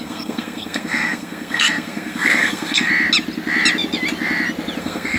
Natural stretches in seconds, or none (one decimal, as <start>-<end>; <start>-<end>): 2.9-4.8